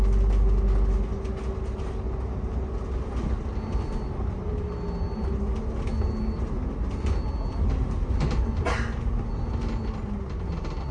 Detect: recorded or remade recorded